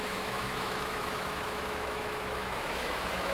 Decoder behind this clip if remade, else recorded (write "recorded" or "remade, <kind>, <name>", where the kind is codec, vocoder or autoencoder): remade, autoencoder, DAC-VAE